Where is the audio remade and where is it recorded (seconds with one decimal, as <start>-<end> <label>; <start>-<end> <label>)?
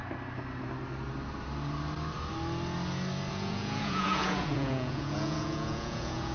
0.0-3.3 recorded; 3.3-6.3 remade